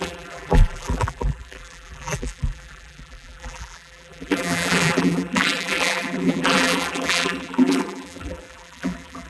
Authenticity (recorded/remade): remade